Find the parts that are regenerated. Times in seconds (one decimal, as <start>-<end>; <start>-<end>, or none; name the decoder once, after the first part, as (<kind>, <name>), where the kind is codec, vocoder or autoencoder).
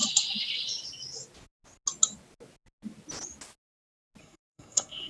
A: 4.2-5.1 (codec, SNAC)